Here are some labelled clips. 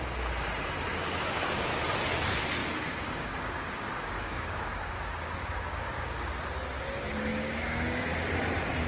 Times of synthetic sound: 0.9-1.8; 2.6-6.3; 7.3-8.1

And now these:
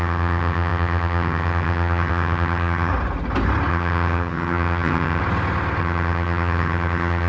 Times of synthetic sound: 0.0-2.9; 3.7-5.2; 5.8-7.3

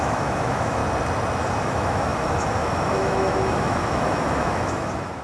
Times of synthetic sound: 0.0-0.8; 1.6-5.2

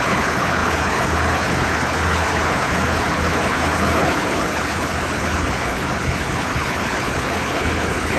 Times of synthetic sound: 0.0-8.2

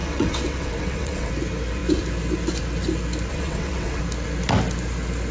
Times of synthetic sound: 0.0-1.3; 3.3-4.0